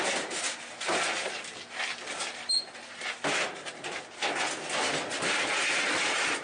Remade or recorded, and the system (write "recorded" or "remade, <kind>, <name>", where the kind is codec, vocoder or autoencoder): recorded